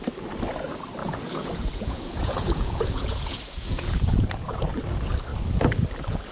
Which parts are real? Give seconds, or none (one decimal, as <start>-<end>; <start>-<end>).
0.0-1.0; 4.8-6.3